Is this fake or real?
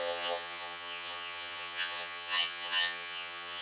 fake